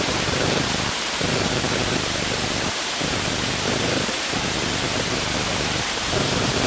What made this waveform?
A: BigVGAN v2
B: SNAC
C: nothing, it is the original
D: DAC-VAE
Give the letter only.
A